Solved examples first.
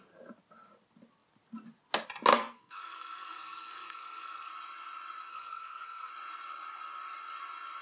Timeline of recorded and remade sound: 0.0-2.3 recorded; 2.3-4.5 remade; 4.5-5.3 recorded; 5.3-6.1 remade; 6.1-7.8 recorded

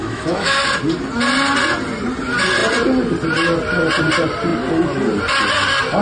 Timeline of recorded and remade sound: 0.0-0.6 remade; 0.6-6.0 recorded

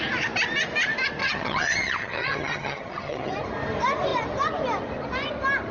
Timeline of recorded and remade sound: 0.0-1.2 recorded; 1.2-3.3 remade; 3.3-5.7 recorded

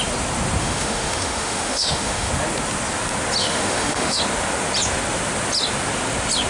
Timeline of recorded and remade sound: 0.0-0.6 recorded; 0.6-2.3 remade; 2.3-3.4 recorded; 3.4-4.2 remade; 4.2-6.5 recorded